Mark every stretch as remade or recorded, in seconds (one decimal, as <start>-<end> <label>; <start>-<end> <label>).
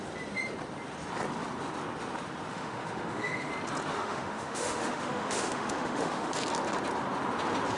0.0-2.5 recorded; 2.5-3.5 remade; 3.5-3.9 recorded; 3.9-6.3 remade; 6.3-7.8 recorded